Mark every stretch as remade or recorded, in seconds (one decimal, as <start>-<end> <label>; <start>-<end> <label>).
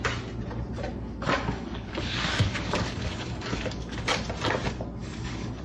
0.0-0.9 recorded; 0.9-4.2 remade; 4.2-5.0 recorded; 5.0-5.6 remade